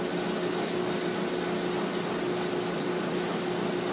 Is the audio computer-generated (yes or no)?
no